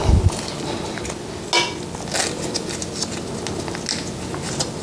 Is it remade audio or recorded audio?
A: recorded